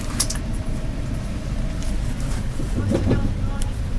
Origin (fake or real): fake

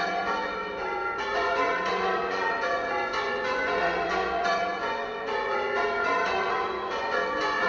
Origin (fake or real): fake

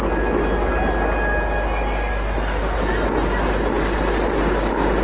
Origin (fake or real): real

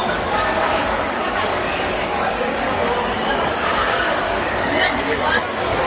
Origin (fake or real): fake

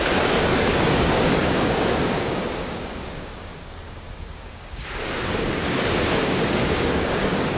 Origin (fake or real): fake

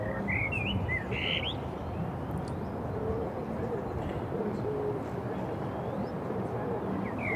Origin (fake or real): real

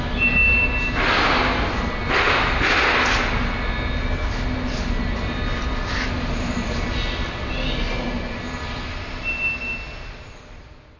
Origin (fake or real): real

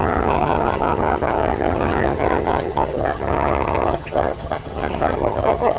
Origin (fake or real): fake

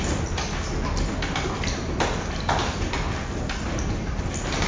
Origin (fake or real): real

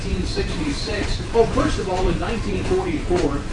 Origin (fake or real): fake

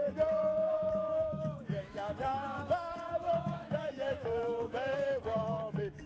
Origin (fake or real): fake